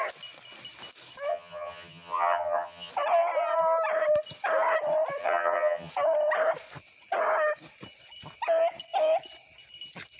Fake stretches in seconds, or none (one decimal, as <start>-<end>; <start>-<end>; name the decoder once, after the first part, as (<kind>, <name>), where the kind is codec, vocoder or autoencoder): 1.3-2.9 (vocoder, HiFi-GAN); 5.2-5.9